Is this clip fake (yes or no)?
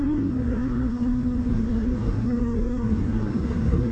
yes